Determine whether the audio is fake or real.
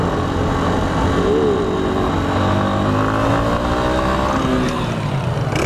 real